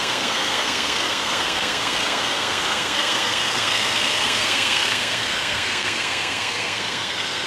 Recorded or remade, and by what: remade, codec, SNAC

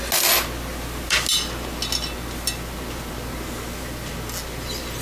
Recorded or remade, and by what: recorded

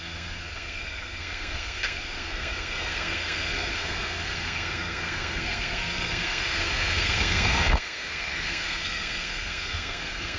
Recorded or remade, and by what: remade, codec, SNAC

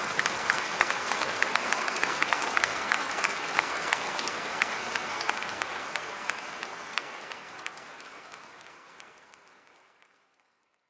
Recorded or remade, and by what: remade, codec, SNAC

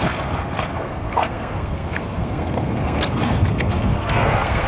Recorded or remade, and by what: remade, codec, SNAC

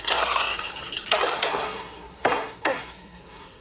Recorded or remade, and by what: remade, codec, SNAC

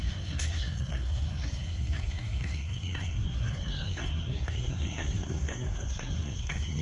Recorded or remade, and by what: remade, codec, SNAC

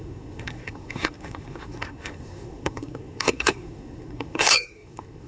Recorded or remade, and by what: remade, codec, SNAC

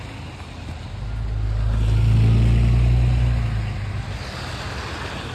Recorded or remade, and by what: recorded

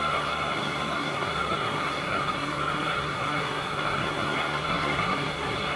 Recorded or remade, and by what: remade, codec, SNAC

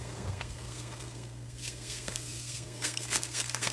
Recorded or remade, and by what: remade, codec, SNAC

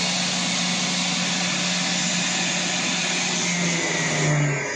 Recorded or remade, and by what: recorded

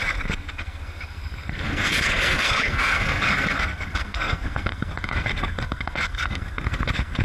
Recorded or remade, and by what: remade, codec, SNAC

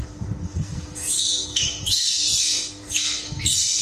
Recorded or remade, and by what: remade, codec, SNAC